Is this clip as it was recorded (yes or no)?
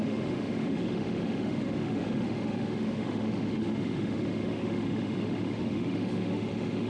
no